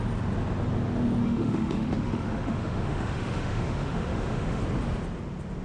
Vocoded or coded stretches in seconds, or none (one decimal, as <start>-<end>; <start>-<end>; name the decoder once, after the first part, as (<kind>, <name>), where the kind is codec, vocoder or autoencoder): 1.2-4.6 (autoencoder, DAC-VAE)